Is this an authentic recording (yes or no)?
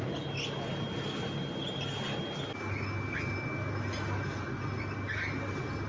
yes